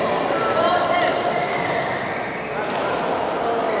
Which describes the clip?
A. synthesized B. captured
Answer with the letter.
B